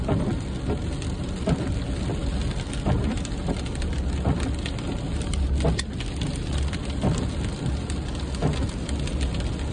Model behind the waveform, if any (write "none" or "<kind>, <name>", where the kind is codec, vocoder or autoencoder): none